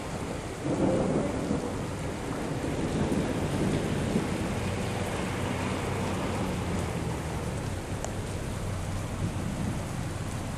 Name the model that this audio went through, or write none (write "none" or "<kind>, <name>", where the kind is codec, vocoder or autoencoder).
none